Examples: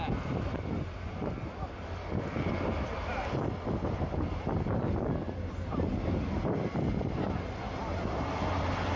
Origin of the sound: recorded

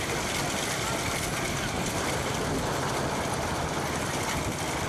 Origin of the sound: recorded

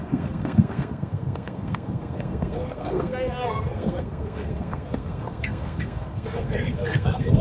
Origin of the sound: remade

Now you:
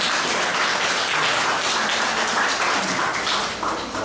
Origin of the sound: recorded